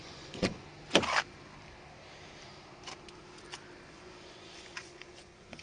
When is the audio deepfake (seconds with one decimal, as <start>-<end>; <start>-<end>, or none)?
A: 0.0-0.5; 3.9-5.6